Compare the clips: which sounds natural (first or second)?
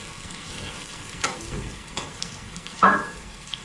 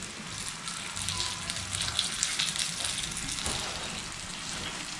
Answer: second